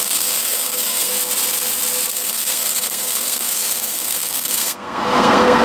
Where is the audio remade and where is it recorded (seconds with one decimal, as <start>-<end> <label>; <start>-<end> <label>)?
0.0-1.1 remade; 1.1-2.1 recorded; 2.1-5.6 remade